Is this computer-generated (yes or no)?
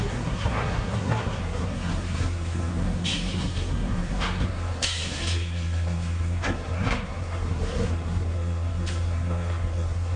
yes